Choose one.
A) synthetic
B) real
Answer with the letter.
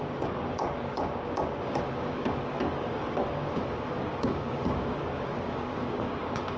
A